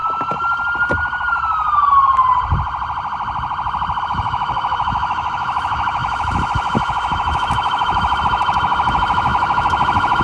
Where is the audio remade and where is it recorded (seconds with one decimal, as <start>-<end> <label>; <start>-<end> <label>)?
0.0-4.0 recorded; 4.0-10.2 remade